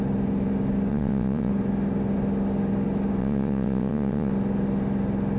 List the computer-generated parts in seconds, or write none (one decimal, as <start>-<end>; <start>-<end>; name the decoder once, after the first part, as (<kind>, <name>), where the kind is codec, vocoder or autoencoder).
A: 0.9-1.5 (vocoder, WaveNeXt); 3.2-4.3